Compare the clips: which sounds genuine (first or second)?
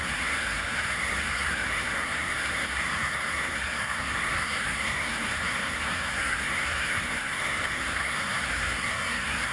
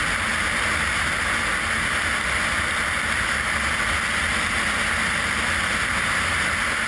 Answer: second